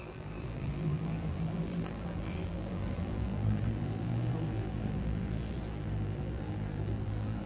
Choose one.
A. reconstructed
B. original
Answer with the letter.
A